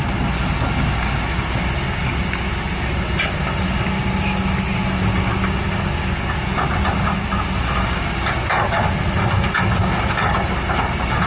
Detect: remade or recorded recorded